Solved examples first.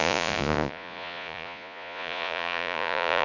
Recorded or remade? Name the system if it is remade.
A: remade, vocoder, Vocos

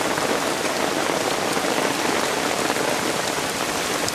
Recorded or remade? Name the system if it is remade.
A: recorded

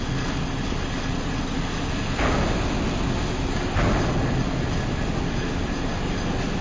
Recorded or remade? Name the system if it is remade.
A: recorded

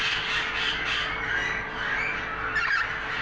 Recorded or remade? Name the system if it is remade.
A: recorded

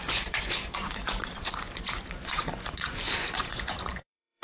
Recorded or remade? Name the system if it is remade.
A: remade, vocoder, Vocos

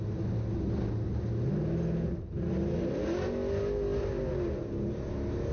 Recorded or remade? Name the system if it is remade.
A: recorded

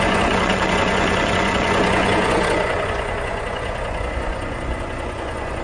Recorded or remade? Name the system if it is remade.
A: remade, vocoder, Vocos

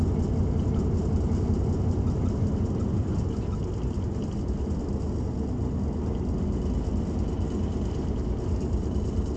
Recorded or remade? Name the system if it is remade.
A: recorded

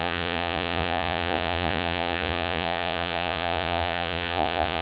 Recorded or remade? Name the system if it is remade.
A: remade, vocoder, Vocos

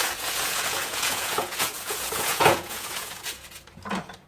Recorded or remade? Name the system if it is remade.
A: remade, vocoder, Vocos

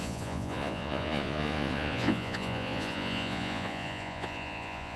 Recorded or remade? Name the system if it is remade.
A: remade, vocoder, Vocos